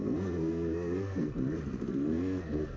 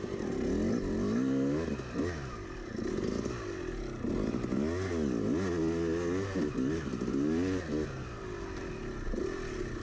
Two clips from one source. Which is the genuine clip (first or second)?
second